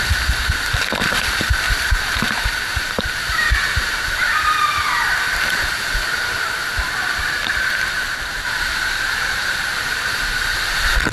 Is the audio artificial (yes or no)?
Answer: yes